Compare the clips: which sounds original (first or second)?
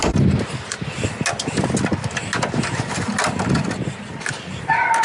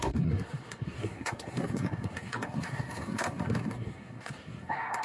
first